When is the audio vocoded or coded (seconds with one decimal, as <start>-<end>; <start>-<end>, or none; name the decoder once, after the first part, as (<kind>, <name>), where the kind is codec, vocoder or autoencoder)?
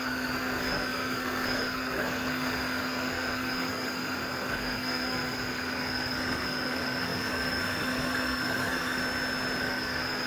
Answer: 0.0-9.0 (codec, SNAC); 9.6-10.3